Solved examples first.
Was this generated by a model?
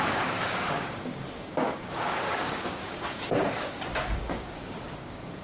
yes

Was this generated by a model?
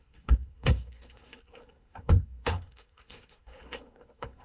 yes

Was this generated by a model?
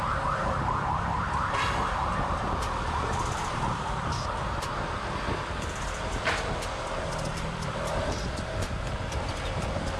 yes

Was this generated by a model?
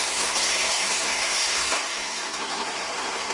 yes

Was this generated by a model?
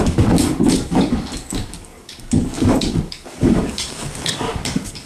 yes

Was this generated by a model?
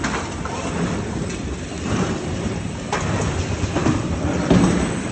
yes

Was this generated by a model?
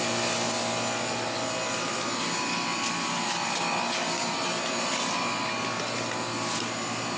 no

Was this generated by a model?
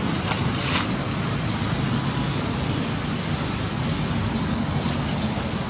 no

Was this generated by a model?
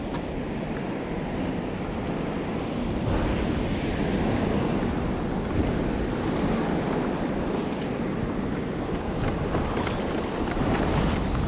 no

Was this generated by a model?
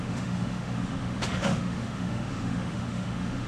yes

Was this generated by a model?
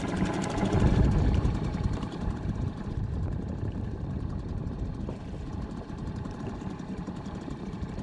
yes